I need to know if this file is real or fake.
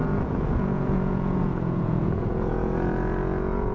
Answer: fake